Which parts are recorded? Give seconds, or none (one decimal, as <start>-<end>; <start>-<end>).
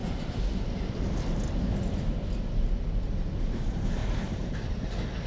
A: 0.0-5.3